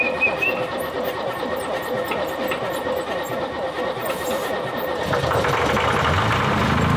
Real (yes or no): yes